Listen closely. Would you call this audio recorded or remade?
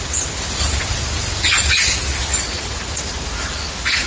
recorded